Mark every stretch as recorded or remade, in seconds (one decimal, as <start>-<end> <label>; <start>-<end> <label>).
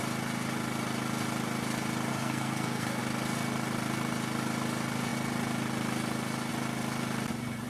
0.0-2.1 recorded; 2.1-3.0 remade; 3.0-7.7 recorded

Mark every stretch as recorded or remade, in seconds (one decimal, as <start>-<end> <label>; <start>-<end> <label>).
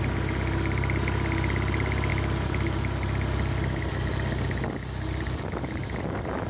0.0-6.5 recorded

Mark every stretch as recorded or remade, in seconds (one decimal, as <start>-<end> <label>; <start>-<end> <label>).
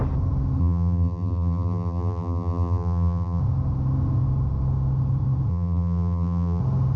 0.0-0.6 recorded; 0.6-3.4 remade; 3.4-5.5 recorded; 5.5-6.6 remade; 6.6-7.0 recorded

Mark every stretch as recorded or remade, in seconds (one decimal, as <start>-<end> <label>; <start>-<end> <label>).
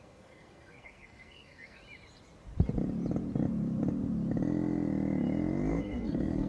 0.0-1.8 remade; 1.8-5.7 recorded; 5.7-6.5 remade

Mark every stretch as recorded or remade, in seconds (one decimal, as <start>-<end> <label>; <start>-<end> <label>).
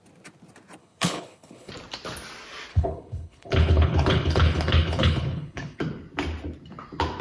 0.0-0.8 recorded; 0.8-1.7 remade; 1.7-2.7 recorded; 2.7-5.8 remade; 5.8-7.2 recorded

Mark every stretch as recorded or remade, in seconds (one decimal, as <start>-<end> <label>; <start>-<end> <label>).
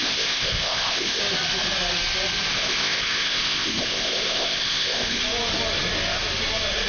0.0-1.2 remade; 1.2-2.5 recorded; 2.5-5.2 remade; 5.2-6.9 recorded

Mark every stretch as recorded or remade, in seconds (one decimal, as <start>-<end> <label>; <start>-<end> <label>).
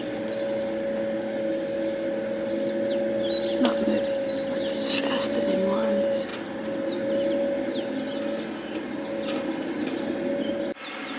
0.0-11.2 recorded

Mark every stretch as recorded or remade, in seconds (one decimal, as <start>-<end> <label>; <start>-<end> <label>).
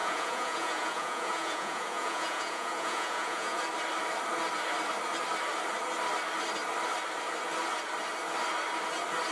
0.0-3.6 remade; 3.6-9.3 recorded